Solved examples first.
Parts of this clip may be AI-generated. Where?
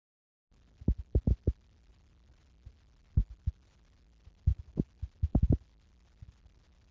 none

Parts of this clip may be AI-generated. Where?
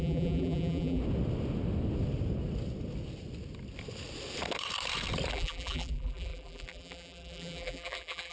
0.0-1.0 (vocoder, BigVGAN v2); 5.3-8.3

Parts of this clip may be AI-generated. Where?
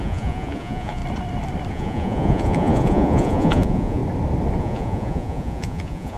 0.0-1.0 (vocoder, Vocos); 1.7-4.0; 4.6-6.2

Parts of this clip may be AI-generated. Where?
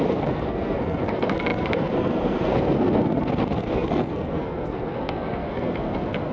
0.0-6.3 (codec, SNAC)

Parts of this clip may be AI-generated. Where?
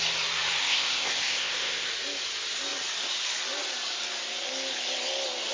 0.6-1.9 (codec, ZipCodec)